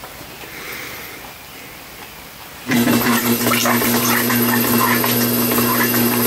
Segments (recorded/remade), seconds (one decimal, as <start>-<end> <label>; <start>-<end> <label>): 0.0-6.3 recorded